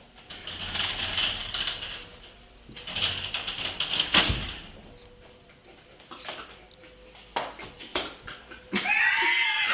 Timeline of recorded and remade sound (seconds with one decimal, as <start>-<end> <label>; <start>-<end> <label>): 0.0-9.7 recorded